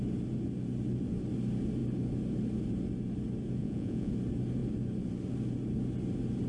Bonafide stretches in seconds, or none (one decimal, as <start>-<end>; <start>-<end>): 0.0-3.6; 4.1-6.5